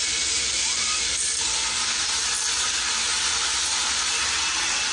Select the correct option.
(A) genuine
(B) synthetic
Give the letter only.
A